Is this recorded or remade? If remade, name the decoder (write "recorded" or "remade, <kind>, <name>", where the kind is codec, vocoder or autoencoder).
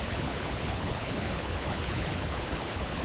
remade, codec, HILCodec